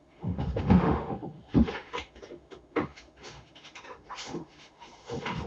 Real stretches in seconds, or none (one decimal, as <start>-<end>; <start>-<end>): none